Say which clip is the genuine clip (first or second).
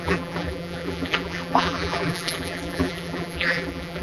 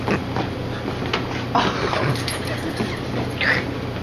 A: second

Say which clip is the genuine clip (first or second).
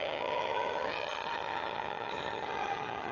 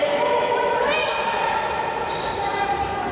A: second